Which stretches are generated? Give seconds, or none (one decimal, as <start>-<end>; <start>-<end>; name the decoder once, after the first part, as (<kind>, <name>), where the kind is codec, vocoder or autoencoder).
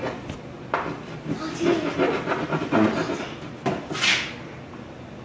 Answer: none